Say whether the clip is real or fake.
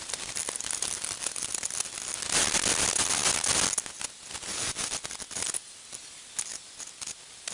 real